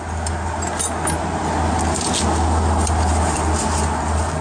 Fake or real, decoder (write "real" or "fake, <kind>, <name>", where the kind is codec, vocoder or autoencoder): real